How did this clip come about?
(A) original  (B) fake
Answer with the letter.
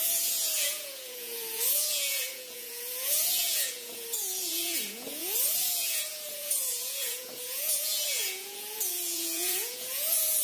B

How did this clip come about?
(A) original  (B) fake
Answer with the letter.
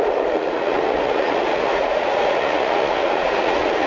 B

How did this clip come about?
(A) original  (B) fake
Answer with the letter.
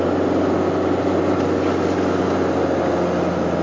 A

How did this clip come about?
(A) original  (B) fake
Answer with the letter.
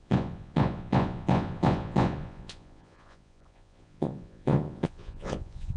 B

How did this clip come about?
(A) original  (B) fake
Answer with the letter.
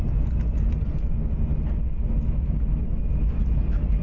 A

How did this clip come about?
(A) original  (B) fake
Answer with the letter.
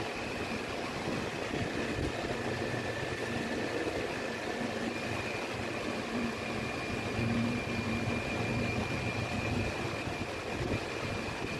A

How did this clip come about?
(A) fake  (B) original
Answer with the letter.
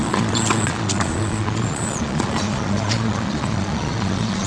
A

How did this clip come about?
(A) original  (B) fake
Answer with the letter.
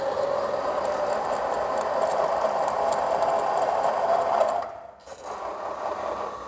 A